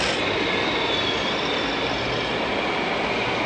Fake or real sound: real